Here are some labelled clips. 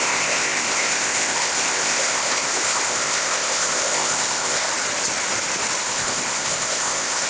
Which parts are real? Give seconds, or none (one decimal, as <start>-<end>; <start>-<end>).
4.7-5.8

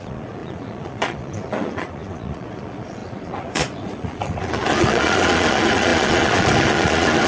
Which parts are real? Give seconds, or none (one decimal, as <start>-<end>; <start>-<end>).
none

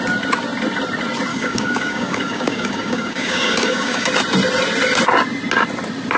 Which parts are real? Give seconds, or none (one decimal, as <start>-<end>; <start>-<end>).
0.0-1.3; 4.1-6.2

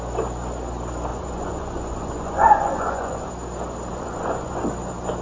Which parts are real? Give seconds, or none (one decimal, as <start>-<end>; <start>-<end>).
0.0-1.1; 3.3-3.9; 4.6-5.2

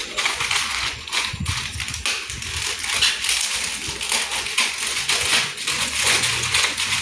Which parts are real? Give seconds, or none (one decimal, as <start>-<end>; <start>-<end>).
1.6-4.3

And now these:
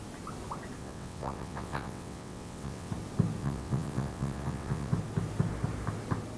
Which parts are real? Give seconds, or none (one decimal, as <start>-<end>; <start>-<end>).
0.0-0.8; 2.9-3.4; 4.9-6.4

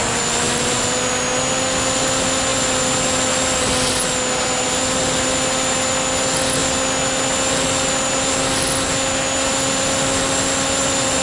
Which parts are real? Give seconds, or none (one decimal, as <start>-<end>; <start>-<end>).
0.0-11.2

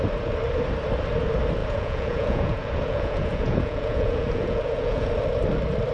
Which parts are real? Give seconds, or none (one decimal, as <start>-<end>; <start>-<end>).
0.0-1.6; 5.1-5.9